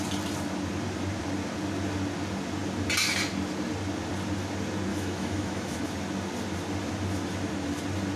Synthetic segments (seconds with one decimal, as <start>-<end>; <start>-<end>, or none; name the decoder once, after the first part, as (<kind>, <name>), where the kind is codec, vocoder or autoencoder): 4.9-5.8 (autoencoder, DAC-VAE)